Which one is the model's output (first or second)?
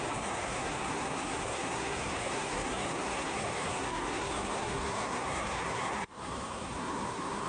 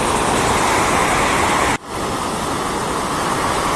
first